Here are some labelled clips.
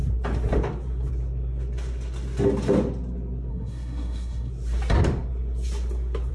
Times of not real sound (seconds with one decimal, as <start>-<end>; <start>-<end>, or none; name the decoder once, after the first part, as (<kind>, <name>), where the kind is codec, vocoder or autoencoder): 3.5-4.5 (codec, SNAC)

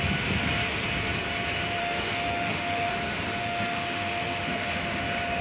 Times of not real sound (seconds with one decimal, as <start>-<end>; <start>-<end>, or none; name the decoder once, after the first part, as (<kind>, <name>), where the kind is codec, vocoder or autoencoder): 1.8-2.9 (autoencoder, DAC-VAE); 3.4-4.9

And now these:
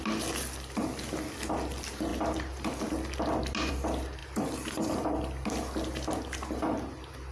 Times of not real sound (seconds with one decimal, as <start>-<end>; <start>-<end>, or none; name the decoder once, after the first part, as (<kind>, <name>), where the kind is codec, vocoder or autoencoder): none

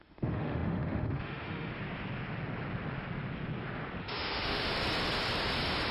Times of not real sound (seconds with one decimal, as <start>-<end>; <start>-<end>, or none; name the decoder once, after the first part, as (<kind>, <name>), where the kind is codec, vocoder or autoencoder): 0.0-1.7 (autoencoder, DAC-VAE); 4.0-4.7

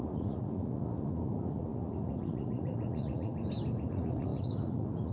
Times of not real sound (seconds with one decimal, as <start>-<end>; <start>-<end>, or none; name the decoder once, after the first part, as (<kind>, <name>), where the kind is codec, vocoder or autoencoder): 0.0-3.3 (vocoder, Vocos); 3.9-5.1

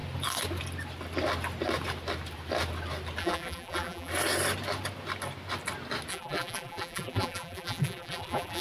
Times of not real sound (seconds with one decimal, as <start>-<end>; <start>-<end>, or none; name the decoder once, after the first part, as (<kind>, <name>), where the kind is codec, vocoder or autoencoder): 3.2-4.1 (vocoder, BigVGAN v2); 6.1-8.6

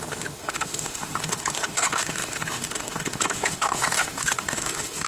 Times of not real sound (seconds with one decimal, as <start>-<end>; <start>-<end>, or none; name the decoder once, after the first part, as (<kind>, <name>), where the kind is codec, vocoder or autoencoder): 0.0-5.1 (autoencoder, DAC-VAE)